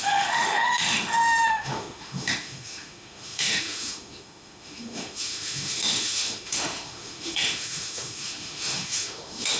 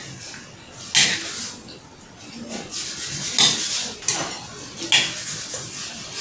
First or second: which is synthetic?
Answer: first